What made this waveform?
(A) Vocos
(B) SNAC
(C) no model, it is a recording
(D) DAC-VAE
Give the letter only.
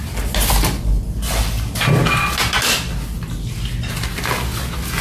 C